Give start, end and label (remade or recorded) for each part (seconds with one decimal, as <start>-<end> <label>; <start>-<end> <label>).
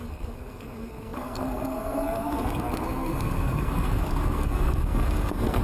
0.0-5.6 remade